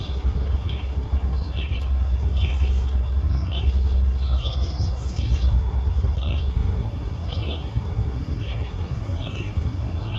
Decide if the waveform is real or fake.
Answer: fake